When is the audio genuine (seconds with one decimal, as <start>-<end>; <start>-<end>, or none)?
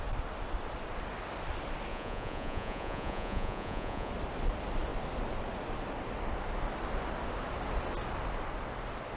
0.0-1.9; 4.1-9.2